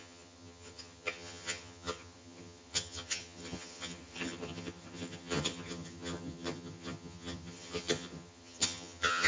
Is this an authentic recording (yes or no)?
no